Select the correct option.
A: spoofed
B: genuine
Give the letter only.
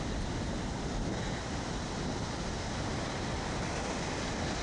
B